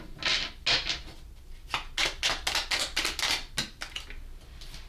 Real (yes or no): yes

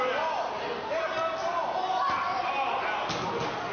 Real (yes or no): yes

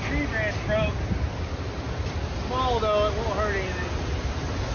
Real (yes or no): yes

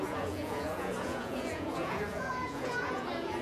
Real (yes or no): no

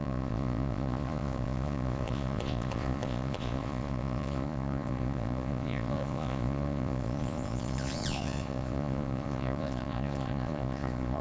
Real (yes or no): no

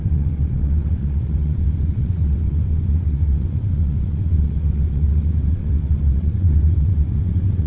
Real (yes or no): no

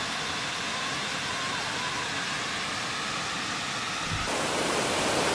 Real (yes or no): yes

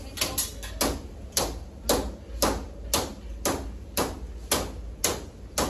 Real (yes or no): yes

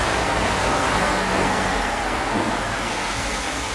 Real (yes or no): no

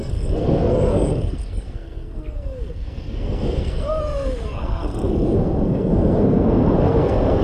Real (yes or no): no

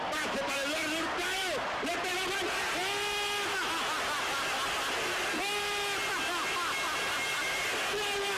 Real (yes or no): yes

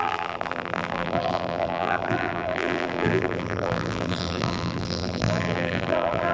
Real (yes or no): no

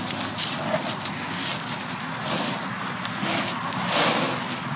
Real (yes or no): yes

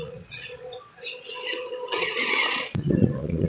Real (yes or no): no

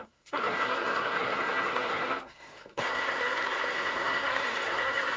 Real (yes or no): no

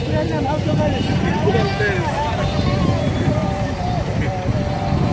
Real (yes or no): yes